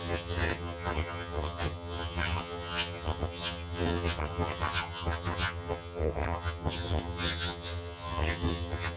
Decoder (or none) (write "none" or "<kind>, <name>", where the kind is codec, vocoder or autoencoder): vocoder, HiFi-GAN